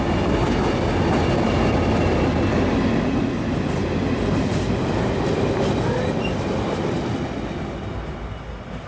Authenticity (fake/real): real